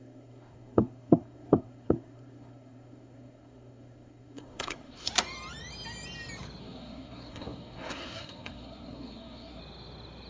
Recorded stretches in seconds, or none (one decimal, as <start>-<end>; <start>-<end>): 5.1-6.6; 9.6-10.3